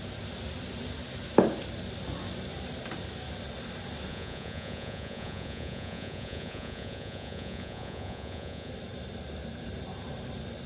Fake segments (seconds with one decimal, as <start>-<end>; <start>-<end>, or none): 4.1-8.7